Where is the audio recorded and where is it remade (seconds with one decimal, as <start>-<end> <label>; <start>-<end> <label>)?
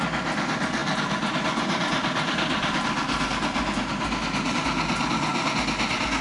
0.0-6.2 recorded